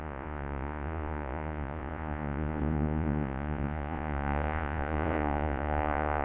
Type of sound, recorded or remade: remade